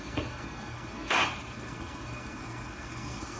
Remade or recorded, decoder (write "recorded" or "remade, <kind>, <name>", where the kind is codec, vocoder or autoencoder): remade, codec, SNAC